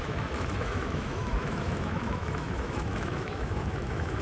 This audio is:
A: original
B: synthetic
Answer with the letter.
B